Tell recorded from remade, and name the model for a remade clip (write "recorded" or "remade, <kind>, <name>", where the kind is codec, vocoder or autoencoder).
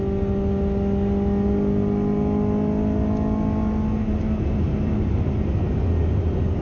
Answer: recorded